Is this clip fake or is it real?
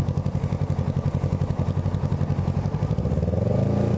real